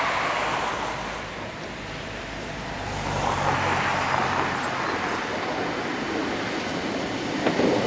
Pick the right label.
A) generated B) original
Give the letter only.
B